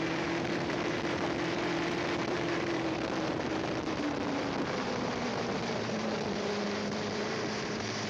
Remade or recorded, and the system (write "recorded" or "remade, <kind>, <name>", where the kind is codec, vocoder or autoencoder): remade, vocoder, BigVGAN v2